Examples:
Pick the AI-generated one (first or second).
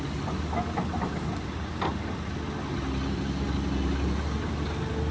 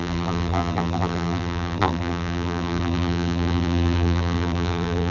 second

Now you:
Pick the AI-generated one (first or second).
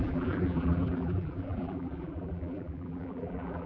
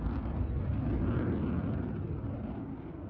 first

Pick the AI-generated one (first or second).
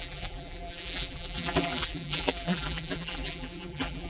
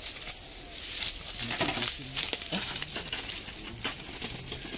first